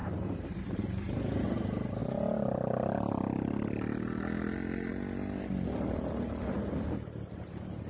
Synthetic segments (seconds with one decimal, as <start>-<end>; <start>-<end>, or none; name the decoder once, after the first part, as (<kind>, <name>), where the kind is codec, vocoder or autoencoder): 0.0-0.6 (vocoder, BigVGAN v2)